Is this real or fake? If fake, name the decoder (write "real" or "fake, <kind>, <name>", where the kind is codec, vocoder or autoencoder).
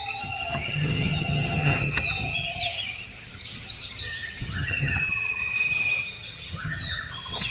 fake, vocoder, HiFi-GAN